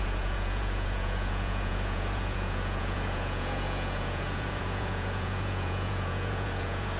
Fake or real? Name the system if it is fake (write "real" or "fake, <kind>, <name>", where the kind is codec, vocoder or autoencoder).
fake, vocoder, Vocos